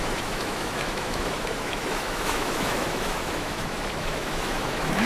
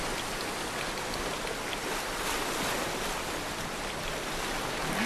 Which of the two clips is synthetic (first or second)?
first